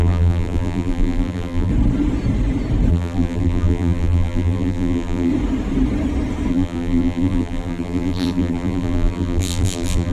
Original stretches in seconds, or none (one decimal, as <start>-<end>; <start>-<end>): 1.7-2.9; 5.3-6.5